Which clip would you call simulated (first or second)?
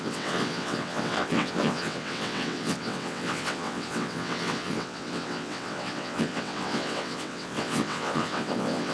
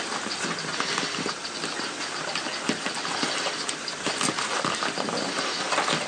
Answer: first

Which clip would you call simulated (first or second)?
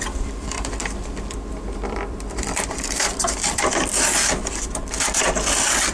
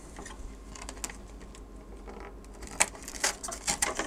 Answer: first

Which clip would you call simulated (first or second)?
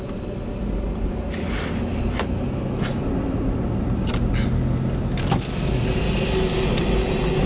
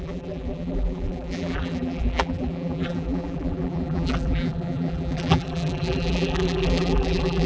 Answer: second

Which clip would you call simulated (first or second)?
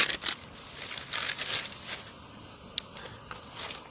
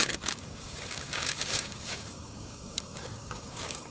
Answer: second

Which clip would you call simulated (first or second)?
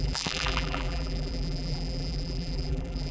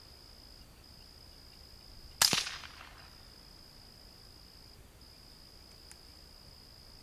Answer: first